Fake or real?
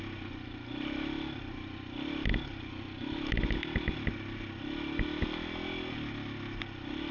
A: real